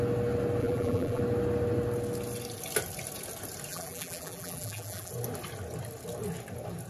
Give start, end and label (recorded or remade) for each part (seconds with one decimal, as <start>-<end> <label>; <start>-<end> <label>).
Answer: 0.0-0.6 recorded; 0.6-1.2 remade; 1.2-3.7 recorded; 3.7-5.1 remade; 5.1-6.9 recorded